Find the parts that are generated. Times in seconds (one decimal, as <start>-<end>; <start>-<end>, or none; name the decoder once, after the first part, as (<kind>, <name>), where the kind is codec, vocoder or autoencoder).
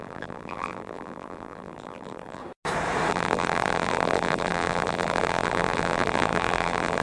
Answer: 0.0-2.4 (vocoder, BigVGAN v2); 3.1-7.0